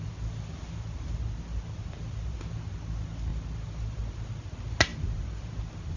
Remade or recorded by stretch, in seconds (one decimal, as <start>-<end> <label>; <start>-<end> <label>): 0.0-6.0 recorded